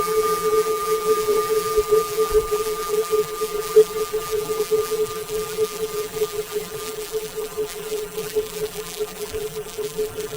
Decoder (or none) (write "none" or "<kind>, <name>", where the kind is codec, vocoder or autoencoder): vocoder, BigVGAN v2